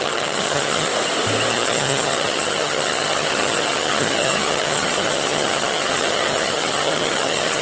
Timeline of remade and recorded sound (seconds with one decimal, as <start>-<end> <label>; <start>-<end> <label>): 0.0-0.9 remade; 0.9-1.5 recorded; 1.5-7.6 remade